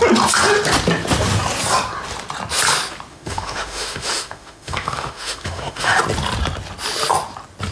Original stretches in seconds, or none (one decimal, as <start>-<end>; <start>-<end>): 0.0-3.1; 6.0-7.7